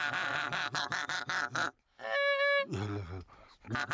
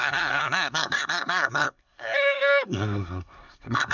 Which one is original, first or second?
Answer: first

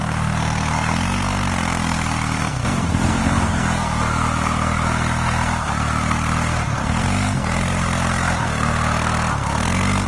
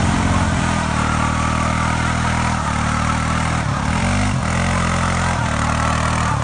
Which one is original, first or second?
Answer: second